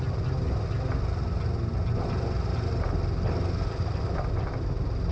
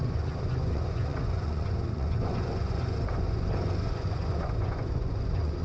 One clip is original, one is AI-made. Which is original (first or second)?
first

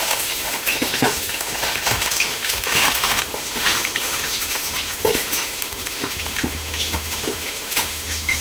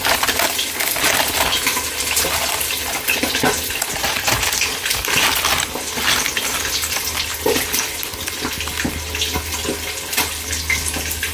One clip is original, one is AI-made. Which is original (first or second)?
second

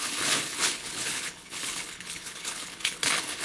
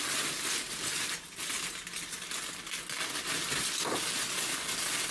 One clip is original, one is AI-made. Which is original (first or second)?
second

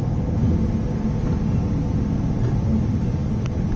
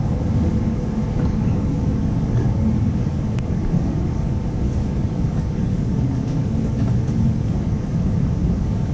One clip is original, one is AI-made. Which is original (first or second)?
first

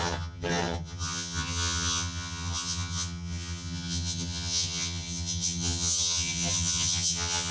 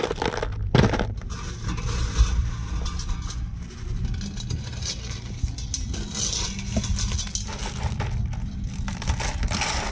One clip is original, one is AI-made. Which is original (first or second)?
second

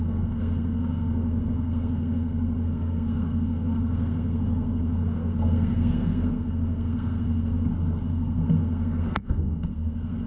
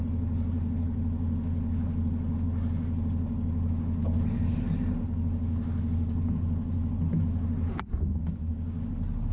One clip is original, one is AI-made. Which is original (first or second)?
second